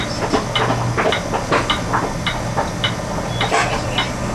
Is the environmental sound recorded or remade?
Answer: recorded